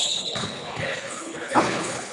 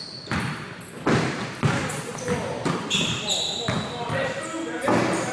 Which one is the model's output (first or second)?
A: first